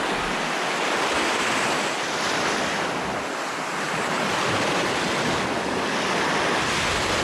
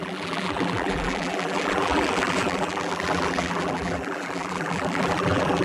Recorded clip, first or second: first